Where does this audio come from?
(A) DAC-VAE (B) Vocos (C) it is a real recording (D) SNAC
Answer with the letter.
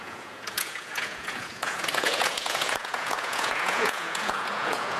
B